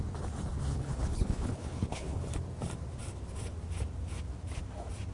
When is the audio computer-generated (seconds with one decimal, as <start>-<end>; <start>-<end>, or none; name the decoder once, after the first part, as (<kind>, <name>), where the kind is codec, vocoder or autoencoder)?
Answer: 0.7-2.3 (codec, HILCodec)